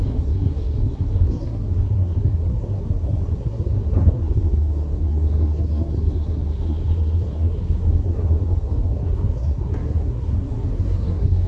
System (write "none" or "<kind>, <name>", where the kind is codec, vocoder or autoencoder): codec, SNAC